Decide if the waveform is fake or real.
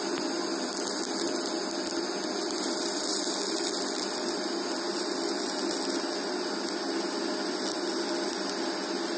real